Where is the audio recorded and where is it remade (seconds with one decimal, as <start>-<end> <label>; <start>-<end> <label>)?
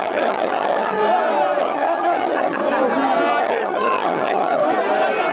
0.0-1.0 remade; 1.0-1.6 recorded; 1.6-2.6 remade; 2.6-3.4 recorded; 3.4-4.6 remade; 4.6-5.3 recorded